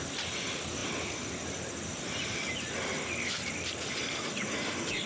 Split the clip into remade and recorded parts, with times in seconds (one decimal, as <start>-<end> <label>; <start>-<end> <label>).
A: 0.0-5.1 recorded